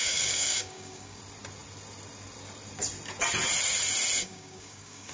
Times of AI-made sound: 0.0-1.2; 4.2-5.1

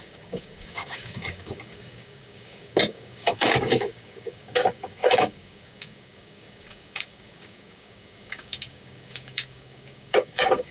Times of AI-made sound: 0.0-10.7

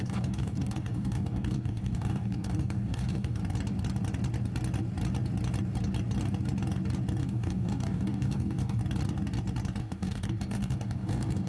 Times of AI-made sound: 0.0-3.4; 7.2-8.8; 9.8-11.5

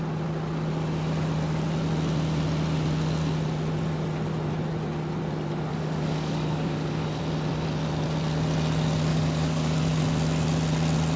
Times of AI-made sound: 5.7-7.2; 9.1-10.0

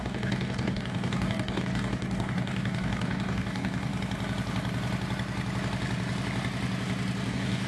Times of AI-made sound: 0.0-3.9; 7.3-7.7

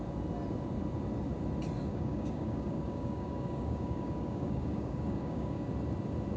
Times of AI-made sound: 1.9-5.7